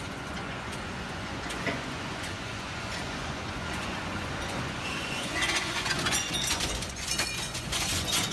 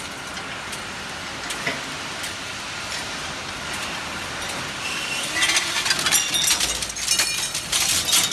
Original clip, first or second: second